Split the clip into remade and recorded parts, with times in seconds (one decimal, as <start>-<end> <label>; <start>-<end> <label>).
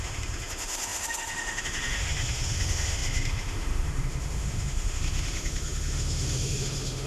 0.0-7.1 remade